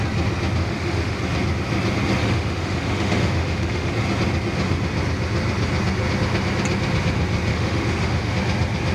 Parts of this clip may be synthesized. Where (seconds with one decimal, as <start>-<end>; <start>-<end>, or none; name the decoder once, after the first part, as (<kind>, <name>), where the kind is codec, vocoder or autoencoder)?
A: 0.6-1.2 (autoencoder, DAC-VAE); 2.2-3.9; 7.5-8.3